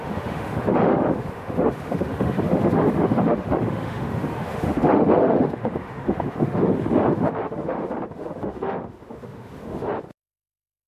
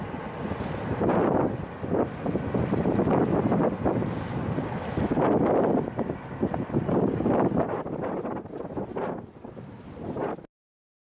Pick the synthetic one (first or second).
first